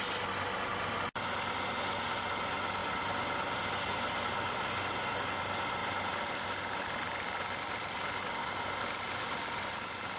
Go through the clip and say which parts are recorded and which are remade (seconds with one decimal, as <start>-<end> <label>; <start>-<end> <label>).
0.0-10.2 recorded